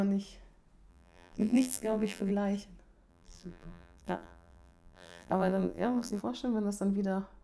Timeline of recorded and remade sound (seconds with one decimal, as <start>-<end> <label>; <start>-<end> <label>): 0.0-0.9 recorded; 0.9-2.3 remade; 2.3-3.1 recorded; 3.1-6.2 remade; 6.2-7.4 recorded